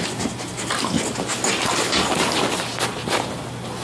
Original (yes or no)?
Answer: yes